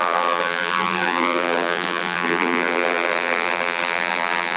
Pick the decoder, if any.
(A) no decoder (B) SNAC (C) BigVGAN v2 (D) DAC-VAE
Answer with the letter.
C